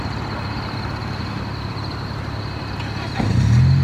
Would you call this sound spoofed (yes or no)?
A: no